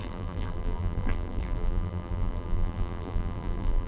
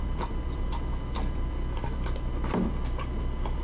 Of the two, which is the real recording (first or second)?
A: second